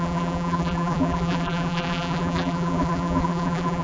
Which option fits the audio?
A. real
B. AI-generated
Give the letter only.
B